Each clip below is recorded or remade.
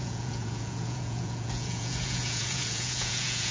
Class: remade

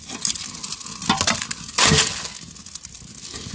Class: recorded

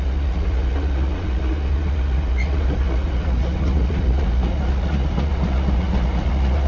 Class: remade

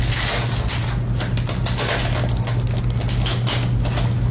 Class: recorded